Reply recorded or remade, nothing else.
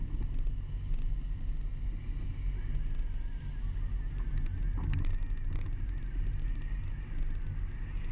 recorded